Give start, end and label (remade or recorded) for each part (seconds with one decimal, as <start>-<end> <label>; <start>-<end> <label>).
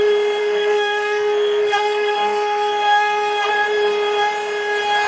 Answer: 0.0-0.4 recorded; 0.4-3.5 remade; 3.5-5.1 recorded